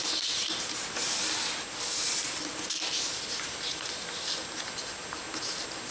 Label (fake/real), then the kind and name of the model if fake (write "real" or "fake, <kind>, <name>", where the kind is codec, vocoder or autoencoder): real